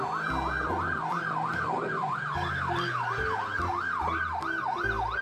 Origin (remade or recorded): recorded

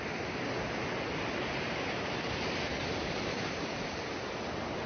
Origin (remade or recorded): remade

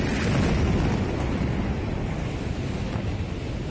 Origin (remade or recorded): recorded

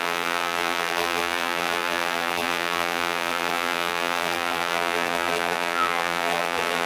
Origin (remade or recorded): remade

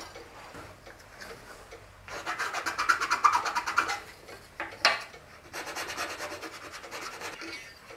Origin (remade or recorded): recorded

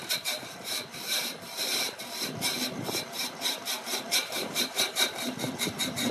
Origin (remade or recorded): remade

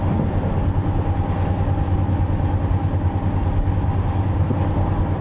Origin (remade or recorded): recorded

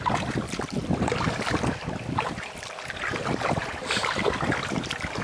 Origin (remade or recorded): recorded